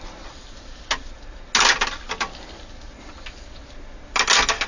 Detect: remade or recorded recorded